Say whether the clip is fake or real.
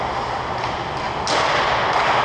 real